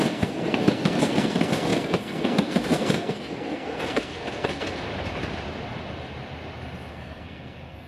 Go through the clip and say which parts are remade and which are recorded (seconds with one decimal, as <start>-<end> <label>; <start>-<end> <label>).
0.0-4.9 remade; 4.9-6.9 recorded; 6.9-7.9 remade